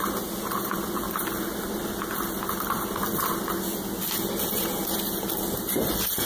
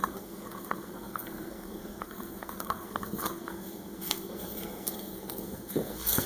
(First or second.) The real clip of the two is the first